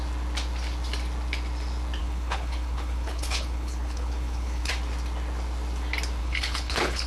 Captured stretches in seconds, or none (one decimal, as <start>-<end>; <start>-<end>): 0.0-2.0; 4.7-6.2